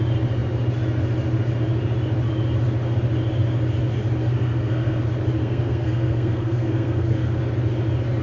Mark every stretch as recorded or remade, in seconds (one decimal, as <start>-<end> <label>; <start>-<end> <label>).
0.0-4.2 recorded; 4.2-5.0 remade; 5.0-5.4 recorded; 5.4-7.4 remade; 7.4-8.2 recorded